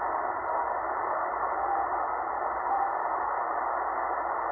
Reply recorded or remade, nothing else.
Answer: recorded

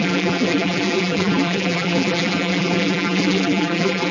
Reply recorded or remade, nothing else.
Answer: remade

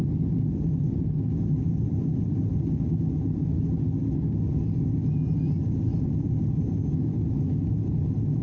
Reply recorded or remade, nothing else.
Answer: recorded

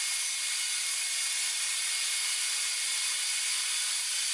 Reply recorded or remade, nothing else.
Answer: recorded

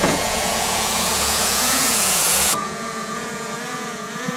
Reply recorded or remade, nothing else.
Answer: remade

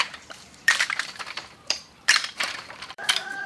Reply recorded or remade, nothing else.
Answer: remade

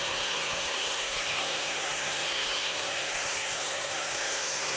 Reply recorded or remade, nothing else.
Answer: remade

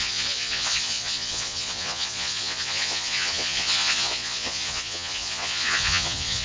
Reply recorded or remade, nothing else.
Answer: remade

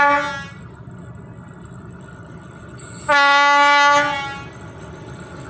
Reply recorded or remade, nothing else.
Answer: recorded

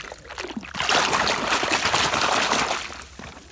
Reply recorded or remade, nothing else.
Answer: recorded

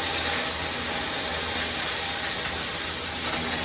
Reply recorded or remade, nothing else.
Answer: recorded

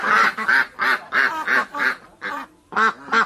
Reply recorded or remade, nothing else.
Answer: recorded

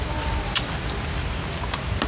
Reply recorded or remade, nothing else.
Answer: recorded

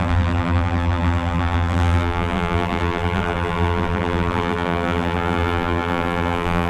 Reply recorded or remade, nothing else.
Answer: remade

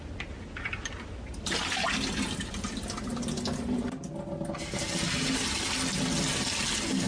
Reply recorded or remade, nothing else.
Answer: recorded